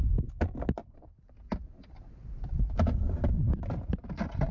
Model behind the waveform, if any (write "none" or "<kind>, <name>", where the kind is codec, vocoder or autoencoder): none